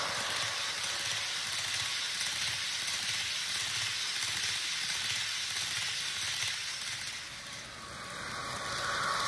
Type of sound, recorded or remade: recorded